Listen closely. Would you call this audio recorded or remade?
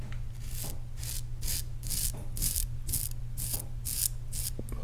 recorded